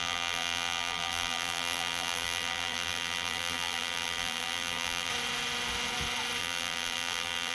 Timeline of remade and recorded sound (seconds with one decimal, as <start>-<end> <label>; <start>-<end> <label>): 0.0-5.1 remade; 5.1-6.4 recorded; 6.4-7.5 remade